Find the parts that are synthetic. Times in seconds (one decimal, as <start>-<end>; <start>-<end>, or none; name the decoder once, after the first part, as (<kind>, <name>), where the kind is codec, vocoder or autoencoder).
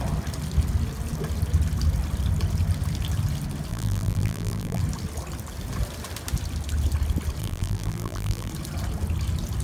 3.7-4.8 (vocoder, BigVGAN v2); 7.4-8.5